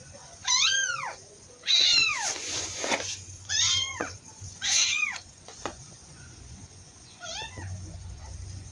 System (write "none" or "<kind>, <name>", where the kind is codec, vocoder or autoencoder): vocoder, Vocos